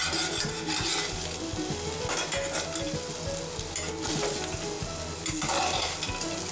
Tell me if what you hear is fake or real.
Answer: real